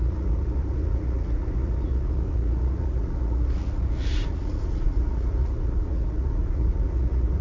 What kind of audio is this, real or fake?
fake